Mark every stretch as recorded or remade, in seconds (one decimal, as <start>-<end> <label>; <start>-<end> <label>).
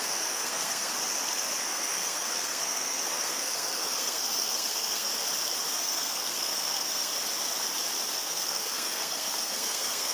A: 0.0-0.9 remade; 0.9-1.6 recorded; 1.6-5.1 remade; 5.1-5.7 recorded; 5.7-7.1 remade; 7.1-8.1 recorded; 8.1-10.1 remade